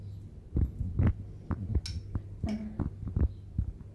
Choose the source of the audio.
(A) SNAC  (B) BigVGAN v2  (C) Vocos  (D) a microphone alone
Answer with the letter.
D